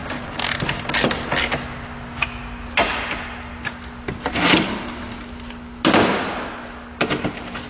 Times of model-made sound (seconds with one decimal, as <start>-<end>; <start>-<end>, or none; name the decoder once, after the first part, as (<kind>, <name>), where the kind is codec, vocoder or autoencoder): none